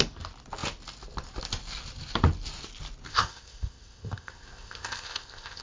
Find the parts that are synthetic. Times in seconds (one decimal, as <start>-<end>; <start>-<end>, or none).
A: 3.1-5.6